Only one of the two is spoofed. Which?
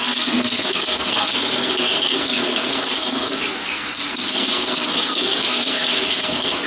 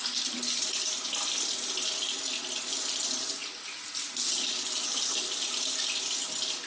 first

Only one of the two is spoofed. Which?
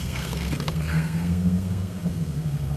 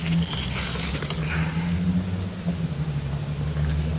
first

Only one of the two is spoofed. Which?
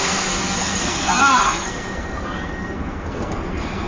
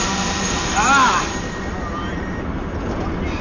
first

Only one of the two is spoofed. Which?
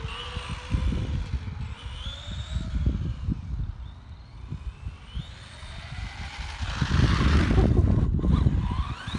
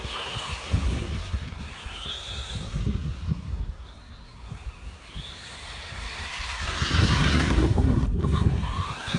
second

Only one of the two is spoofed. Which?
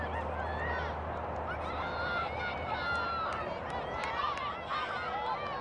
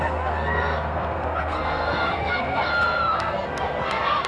second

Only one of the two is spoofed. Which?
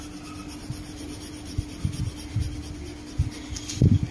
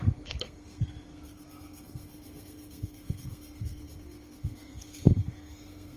second